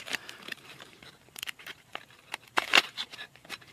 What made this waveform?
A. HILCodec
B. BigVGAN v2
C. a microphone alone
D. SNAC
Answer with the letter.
B